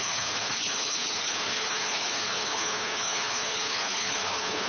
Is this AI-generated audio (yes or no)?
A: yes